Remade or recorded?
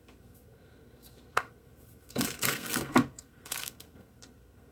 remade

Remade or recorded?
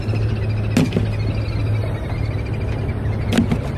recorded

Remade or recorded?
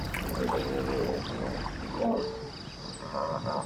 recorded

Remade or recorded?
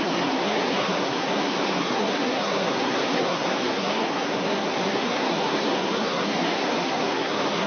remade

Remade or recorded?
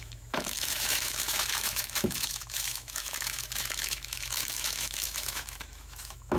remade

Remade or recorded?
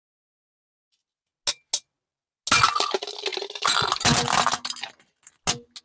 recorded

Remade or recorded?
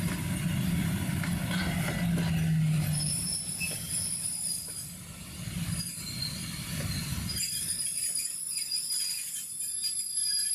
recorded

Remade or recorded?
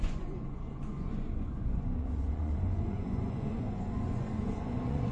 remade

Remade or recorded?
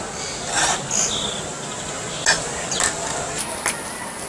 recorded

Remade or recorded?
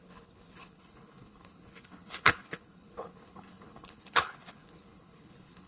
remade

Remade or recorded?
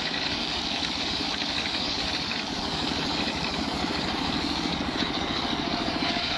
remade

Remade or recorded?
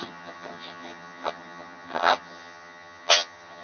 remade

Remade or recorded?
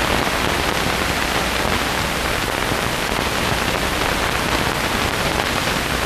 remade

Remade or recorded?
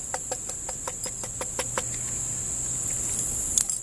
recorded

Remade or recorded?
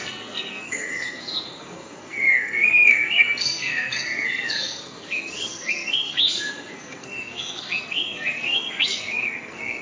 remade